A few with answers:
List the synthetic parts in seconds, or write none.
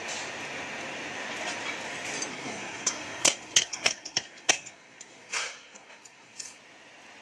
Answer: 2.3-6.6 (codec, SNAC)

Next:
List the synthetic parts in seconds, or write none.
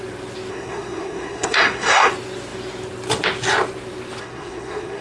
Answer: 0.5-2.1 (codec, SNAC); 4.2-5.0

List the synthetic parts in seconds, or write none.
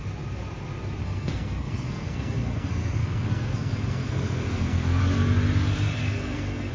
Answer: 1.0-5.0 (codec, SNAC); 6.0-6.7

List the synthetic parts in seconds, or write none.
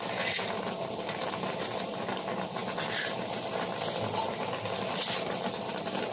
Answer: none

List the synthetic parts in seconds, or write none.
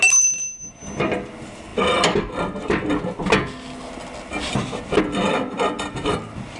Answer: none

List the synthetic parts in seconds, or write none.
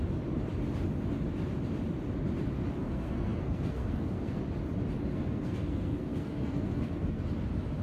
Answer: 2.8-4.4 (codec, SNAC); 5.1-7.2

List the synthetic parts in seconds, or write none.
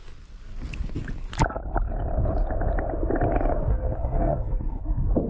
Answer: 3.7-4.8 (codec, SNAC)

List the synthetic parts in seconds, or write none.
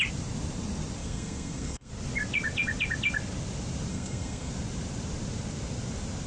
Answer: 1.0-1.9 (codec, SNAC); 3.9-4.5